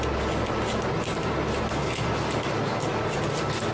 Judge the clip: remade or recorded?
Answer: recorded